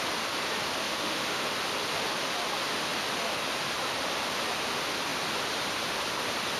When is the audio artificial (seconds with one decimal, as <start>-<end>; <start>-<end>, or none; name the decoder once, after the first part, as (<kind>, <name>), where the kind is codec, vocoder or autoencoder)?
0.8-1.4 (autoencoder, DAC-VAE)